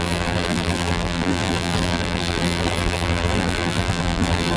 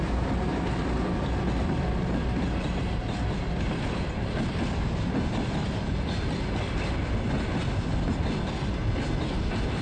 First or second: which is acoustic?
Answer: second